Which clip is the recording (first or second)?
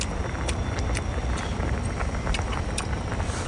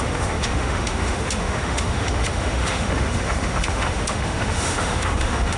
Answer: first